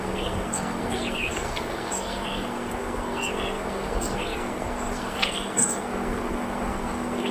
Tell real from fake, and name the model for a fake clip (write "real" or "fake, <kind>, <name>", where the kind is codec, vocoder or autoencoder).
fake, codec, SNAC